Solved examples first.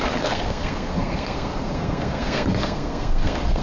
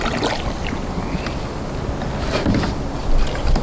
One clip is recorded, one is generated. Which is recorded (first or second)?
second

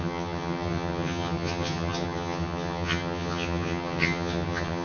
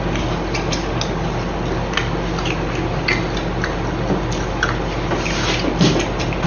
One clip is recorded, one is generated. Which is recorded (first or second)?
second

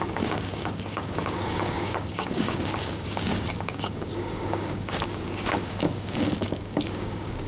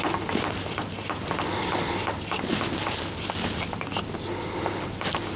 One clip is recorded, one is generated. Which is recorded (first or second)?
second